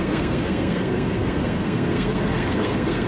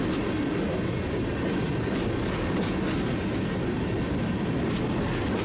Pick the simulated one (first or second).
first